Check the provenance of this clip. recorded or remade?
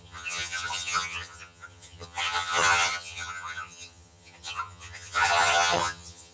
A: remade